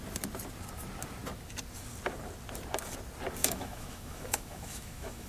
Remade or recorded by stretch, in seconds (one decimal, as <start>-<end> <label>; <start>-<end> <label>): 0.0-3.4 recorded; 3.4-5.3 remade